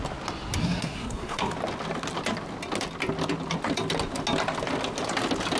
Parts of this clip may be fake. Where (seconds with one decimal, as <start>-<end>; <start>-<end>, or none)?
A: 0.6-1.5